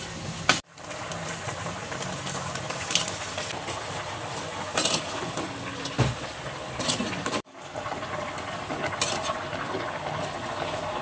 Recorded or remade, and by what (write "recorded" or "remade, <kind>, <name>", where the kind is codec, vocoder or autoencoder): recorded